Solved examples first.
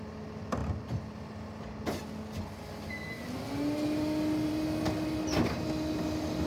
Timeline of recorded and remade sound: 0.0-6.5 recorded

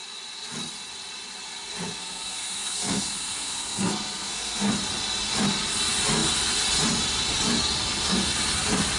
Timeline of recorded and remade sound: 0.0-2.0 recorded; 2.0-4.7 remade; 4.7-9.0 recorded

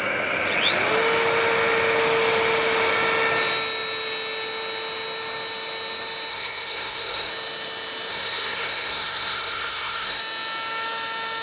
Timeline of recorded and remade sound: 0.0-6.3 recorded; 6.3-7.3 remade; 7.3-8.1 recorded; 8.1-10.2 remade; 10.2-11.4 recorded

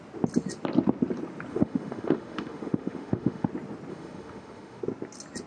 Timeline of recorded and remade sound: 0.0-1.5 recorded; 1.5-3.5 remade; 3.5-3.9 recorded; 3.9-4.8 remade; 4.8-5.5 recorded

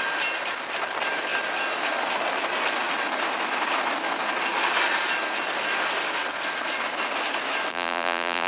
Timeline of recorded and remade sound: 0.0-7.7 recorded; 7.7-8.5 remade

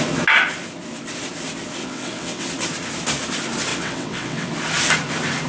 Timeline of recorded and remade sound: 0.0-1.8 recorded; 1.8-2.5 remade; 2.5-3.7 recorded; 3.7-4.5 remade; 4.5-5.5 recorded

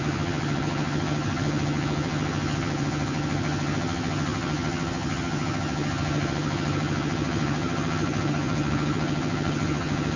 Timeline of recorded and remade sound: 0.0-10.2 remade

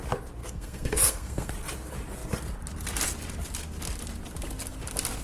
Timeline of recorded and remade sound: 0.0-0.4 recorded; 0.4-1.5 remade; 1.5-5.2 recorded